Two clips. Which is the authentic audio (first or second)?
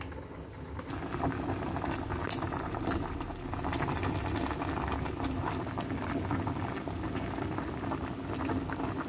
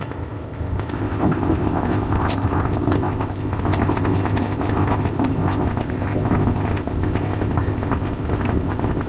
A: first